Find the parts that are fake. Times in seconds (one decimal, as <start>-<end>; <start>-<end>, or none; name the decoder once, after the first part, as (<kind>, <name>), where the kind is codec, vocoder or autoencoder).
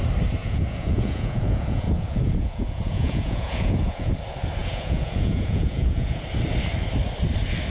0.4-4.1 (vocoder, Vocos); 4.6-6.2